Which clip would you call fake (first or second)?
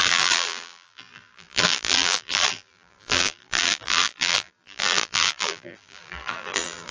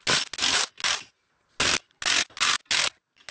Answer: first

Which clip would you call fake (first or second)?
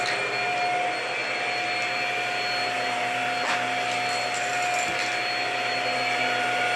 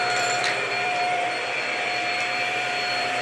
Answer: second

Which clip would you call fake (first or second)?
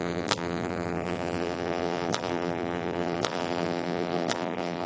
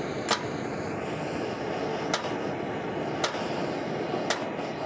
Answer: first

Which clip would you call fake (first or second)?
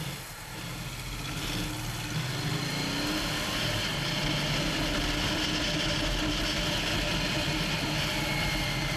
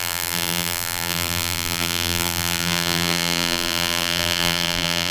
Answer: second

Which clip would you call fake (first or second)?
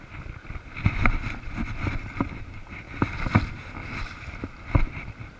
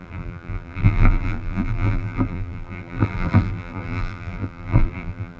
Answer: second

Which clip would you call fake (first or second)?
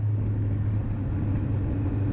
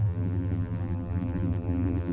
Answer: second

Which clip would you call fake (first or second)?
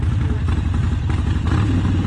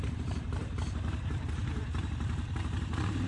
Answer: second